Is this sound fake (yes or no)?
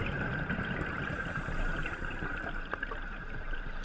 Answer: yes